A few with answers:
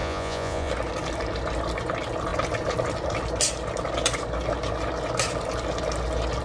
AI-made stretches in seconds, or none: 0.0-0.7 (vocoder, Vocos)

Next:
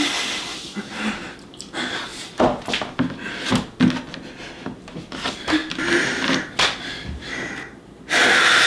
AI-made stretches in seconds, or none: none

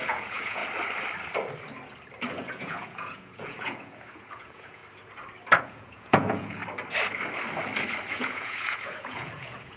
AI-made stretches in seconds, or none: 0.0-0.6 (vocoder, Vocos); 2.3-4.8; 5.6-6.6; 8.1-9.8

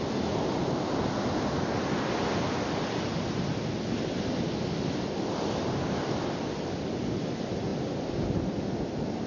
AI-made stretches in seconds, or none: none